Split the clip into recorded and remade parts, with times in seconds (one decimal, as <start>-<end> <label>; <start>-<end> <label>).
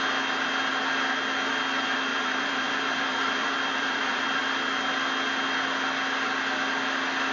0.0-2.1 recorded; 2.1-4.4 remade; 4.4-7.3 recorded